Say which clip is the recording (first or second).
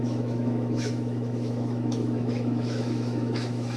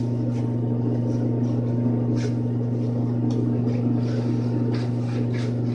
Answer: second